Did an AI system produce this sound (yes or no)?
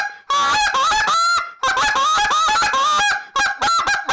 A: no